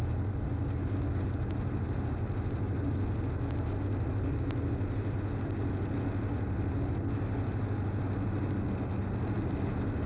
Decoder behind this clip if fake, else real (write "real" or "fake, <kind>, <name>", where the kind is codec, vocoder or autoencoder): real